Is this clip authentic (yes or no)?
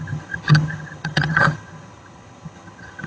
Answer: no